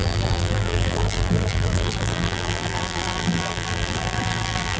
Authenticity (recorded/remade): remade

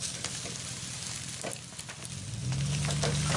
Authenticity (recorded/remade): recorded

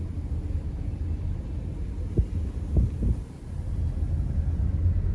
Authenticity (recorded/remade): recorded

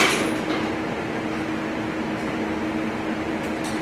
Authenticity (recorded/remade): recorded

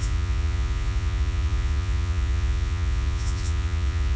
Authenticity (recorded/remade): remade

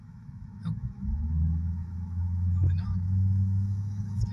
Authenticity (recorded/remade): remade